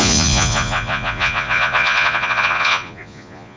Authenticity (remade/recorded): remade